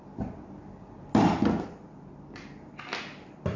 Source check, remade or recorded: recorded